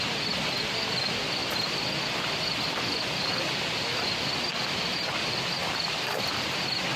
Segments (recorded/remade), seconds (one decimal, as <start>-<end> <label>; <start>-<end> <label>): 0.0-7.0 recorded